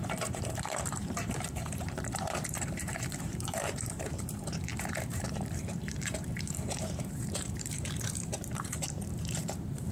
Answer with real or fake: fake